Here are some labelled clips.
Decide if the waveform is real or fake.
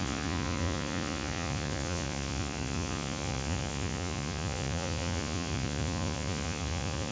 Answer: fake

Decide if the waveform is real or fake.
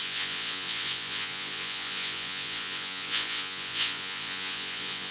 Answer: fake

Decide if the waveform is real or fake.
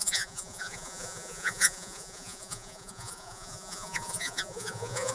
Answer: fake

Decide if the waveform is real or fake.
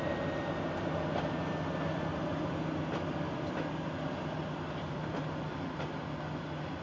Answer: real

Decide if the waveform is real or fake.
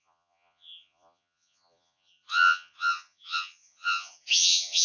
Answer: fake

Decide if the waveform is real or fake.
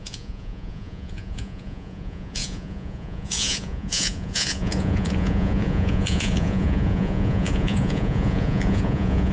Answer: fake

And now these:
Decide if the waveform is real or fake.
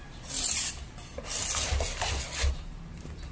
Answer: real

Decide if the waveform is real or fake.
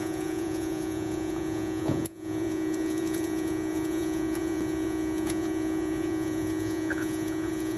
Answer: fake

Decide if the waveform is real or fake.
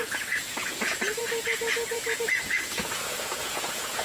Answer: fake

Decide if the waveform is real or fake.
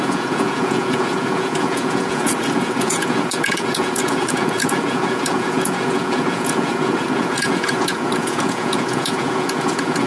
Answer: fake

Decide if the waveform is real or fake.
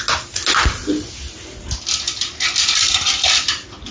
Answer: real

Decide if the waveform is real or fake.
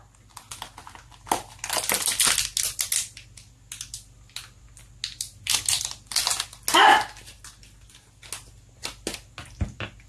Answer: real